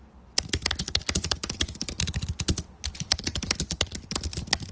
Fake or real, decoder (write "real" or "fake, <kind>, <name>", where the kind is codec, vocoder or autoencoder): real